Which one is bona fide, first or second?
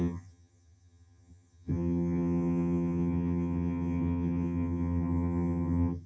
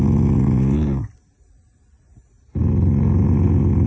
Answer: second